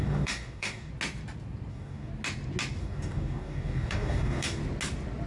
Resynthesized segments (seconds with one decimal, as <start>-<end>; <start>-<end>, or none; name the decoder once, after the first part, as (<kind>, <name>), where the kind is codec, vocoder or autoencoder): 0.0-0.9 (codec, DAC); 1.7-2.1; 2.8-4.6